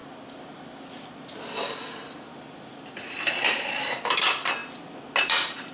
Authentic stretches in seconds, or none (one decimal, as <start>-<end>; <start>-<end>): 0.0-2.3; 4.6-5.2